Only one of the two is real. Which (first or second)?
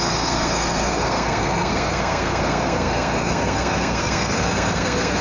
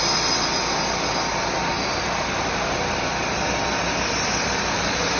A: second